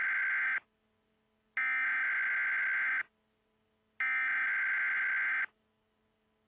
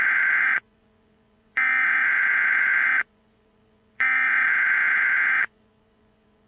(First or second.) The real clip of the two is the first